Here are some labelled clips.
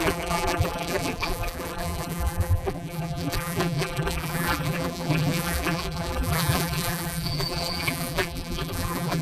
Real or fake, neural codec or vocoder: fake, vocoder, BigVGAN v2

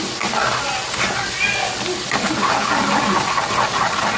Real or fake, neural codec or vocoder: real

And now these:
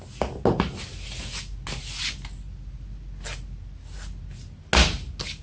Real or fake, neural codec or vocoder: real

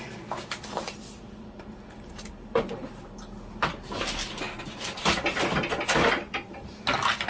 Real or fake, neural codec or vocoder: real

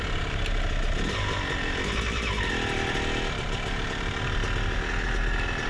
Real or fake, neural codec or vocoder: real